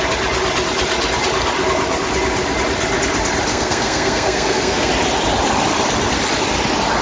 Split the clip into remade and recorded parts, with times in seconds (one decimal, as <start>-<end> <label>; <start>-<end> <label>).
0.0-3.5 recorded; 3.5-4.9 remade; 4.9-7.0 recorded